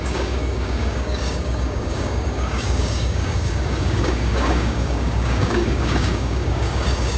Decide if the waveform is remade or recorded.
remade